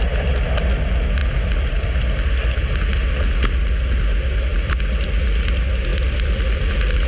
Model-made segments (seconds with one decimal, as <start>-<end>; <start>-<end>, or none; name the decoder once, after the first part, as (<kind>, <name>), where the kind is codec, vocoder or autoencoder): 1.2-3.2 (vocoder, BigVGAN v2); 4.5-5.2; 5.9-7.1